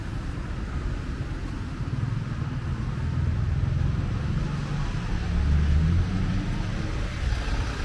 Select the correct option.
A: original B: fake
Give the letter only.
A